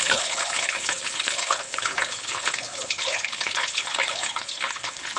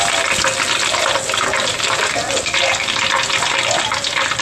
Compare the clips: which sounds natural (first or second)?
second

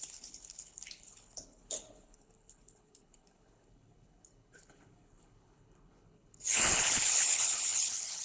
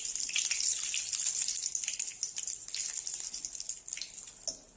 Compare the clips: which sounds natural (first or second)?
second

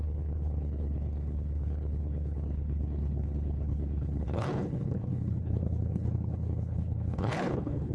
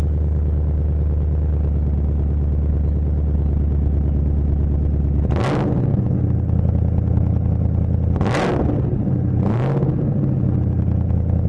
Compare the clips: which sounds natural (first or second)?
second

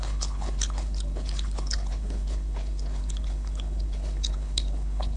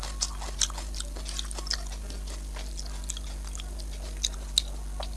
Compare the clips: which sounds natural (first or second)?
second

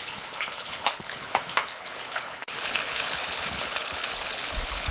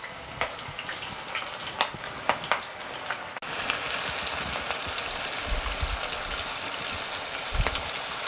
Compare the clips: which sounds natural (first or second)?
second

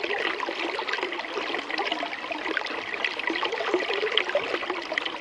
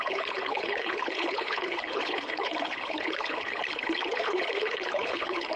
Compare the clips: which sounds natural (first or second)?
first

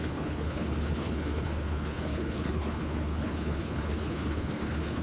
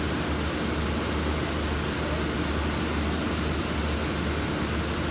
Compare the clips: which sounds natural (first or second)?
second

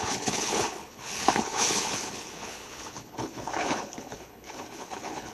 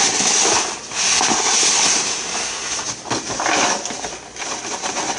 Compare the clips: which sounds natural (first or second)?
second